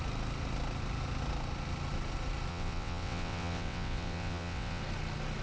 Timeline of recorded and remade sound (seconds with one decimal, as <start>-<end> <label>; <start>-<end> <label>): 0.0-2.5 recorded; 2.5-4.8 remade; 4.8-5.4 recorded